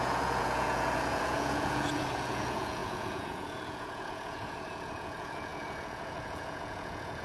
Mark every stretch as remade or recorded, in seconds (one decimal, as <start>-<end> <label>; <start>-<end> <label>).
0.0-7.2 remade